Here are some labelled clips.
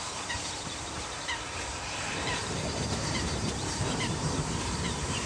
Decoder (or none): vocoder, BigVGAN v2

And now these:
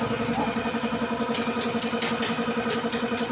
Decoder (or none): none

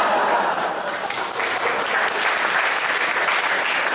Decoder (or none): none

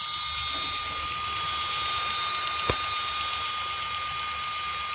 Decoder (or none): none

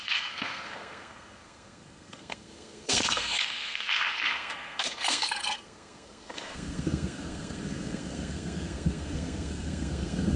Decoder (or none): codec, SNAC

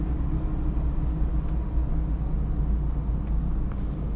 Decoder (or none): none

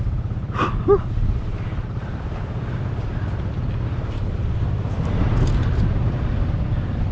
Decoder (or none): none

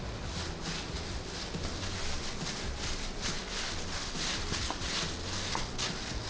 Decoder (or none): none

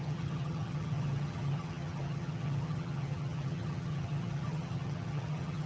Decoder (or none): vocoder, HiFi-GAN